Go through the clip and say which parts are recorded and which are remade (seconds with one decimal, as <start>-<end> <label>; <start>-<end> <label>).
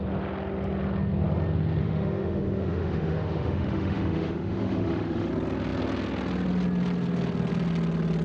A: 0.0-1.8 recorded; 1.8-5.3 remade; 5.3-8.2 recorded